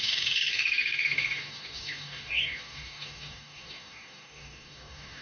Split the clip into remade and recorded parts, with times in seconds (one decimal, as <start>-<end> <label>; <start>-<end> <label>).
0.0-5.2 remade